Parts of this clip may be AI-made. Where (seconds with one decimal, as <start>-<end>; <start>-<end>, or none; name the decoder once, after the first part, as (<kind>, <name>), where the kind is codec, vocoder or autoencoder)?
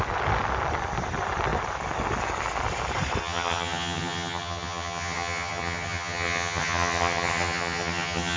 3.2-8.4 (vocoder, HiFi-GAN)